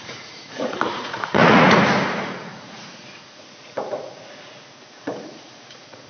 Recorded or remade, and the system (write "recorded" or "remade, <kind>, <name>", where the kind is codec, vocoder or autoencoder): remade, vocoder, Vocos